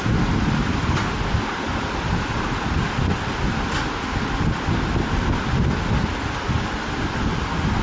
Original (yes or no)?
yes